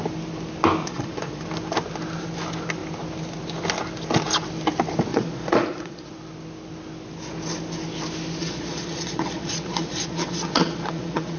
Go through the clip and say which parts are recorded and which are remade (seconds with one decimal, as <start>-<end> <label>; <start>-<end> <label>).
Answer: 0.0-0.8 recorded; 0.8-1.4 remade; 1.4-5.1 recorded; 5.1-6.1 remade; 6.1-8.4 recorded; 8.4-11.4 remade